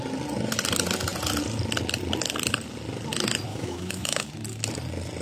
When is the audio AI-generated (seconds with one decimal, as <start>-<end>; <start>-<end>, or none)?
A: 3.5-4.3